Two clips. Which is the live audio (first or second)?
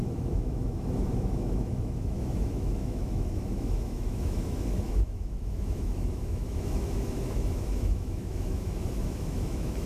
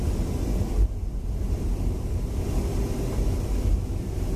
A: second